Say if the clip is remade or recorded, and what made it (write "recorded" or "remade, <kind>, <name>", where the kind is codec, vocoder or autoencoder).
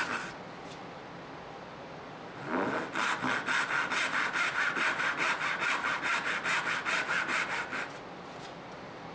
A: recorded